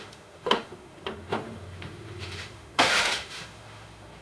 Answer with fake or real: fake